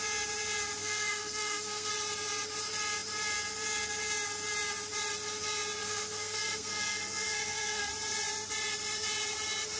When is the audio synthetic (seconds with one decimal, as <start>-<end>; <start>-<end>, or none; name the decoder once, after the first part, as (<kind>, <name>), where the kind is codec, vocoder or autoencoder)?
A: 0.8-1.9 (codec, SNAC); 5.8-7.9